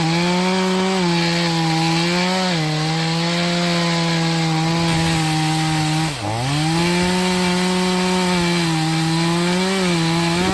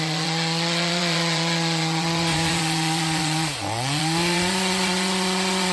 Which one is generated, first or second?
second